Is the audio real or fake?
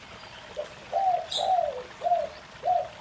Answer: real